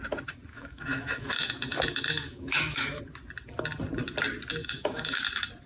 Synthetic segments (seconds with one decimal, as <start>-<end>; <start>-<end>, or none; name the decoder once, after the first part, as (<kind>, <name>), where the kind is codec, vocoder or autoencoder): 0.5-3.0 (autoencoder, DAC-VAE); 4.6-5.2